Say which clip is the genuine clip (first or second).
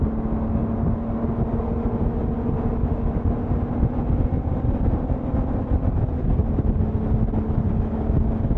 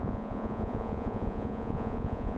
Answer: first